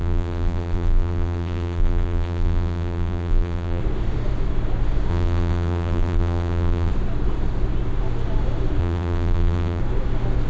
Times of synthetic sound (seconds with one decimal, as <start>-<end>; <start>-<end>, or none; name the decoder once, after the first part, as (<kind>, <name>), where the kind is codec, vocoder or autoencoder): 0.0-3.8 (vocoder, BigVGAN v2); 5.1-6.9; 8.8-9.8